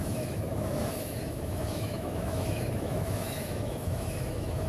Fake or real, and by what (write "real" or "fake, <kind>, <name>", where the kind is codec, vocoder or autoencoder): fake, autoencoder, DAC-VAE